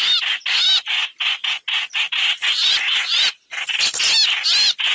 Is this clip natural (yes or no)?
yes